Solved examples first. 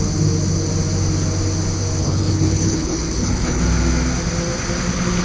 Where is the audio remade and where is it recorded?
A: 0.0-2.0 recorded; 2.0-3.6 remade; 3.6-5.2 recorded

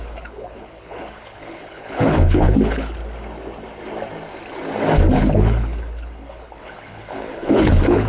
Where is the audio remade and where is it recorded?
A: 0.0-3.0 remade; 3.0-5.1 recorded; 5.1-8.1 remade

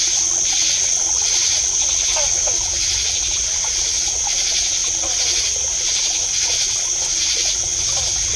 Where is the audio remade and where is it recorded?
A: 0.0-8.4 recorded

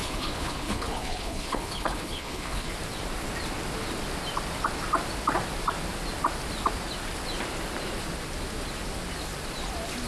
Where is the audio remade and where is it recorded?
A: 0.0-2.7 remade; 2.7-10.1 recorded